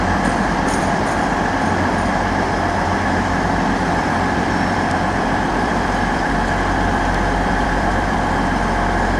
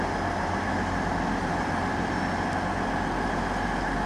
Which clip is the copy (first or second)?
first